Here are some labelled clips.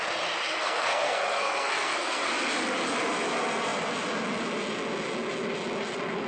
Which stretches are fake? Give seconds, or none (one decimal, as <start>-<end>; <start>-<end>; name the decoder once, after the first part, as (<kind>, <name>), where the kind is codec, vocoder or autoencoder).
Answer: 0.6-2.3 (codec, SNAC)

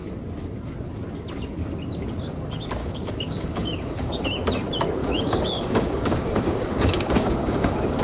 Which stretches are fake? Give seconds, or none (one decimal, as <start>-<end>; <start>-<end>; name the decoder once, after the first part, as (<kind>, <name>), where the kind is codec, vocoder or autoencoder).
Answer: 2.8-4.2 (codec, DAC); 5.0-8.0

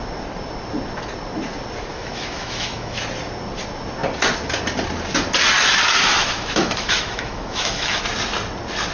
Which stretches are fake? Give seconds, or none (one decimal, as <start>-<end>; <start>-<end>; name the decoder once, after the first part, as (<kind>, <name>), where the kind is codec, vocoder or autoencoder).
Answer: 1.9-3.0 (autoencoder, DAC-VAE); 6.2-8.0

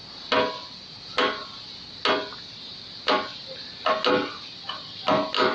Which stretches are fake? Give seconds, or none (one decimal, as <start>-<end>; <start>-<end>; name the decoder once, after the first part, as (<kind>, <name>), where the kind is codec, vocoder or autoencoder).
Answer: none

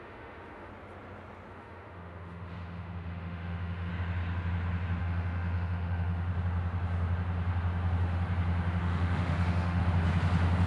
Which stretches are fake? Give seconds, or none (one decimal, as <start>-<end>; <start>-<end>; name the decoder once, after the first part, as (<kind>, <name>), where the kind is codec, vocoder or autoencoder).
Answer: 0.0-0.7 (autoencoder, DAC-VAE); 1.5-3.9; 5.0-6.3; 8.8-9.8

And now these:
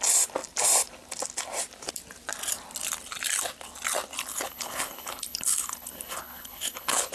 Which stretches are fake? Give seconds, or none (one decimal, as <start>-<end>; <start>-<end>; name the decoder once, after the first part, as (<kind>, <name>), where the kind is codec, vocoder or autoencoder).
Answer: 4.3-7.1 (codec, HILCodec)

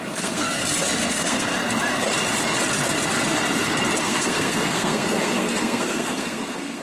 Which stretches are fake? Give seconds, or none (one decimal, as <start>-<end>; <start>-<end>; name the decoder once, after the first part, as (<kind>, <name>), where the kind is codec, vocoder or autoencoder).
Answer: 0.0-0.6 (codec, SNAC); 1.1-1.5; 4.0-6.8